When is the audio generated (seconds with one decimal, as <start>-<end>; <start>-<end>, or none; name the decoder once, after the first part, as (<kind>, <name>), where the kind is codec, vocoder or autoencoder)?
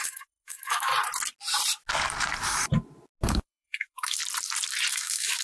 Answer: 0.0-0.9 (autoencoder, DAC-VAE); 3.3-4.2; 4.9-5.4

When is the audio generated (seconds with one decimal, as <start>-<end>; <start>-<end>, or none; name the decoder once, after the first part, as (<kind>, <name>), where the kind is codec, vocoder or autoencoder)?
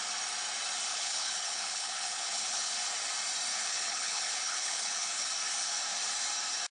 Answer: 0.9-2.7 (codec, HILCodec); 3.5-5.3